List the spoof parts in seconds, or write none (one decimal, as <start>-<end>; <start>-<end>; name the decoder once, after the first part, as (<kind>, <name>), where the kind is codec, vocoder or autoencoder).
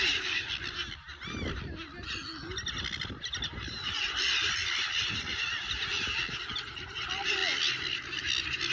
0.0-7.4 (vocoder, BigVGAN v2); 8.2-8.7